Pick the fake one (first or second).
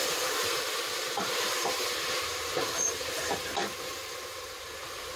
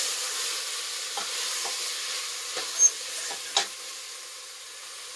first